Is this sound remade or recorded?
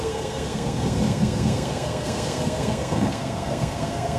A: remade